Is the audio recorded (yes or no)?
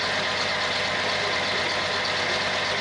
yes